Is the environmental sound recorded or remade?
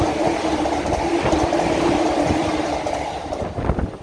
recorded